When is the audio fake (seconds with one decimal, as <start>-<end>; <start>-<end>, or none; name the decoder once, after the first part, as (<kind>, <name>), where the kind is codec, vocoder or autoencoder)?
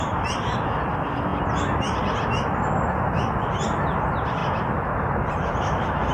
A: none